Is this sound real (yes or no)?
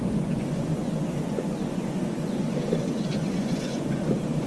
no